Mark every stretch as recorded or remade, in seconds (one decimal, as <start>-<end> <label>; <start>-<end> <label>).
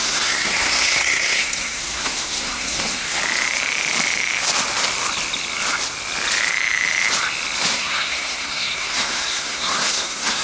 0.0-3.2 remade; 3.2-7.7 recorded; 7.7-10.4 remade